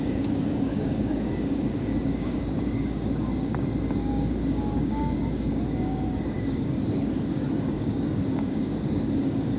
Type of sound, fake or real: fake